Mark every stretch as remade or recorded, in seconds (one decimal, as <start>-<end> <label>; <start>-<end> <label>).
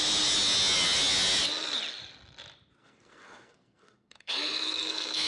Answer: 0.0-2.8 recorded; 2.8-5.3 remade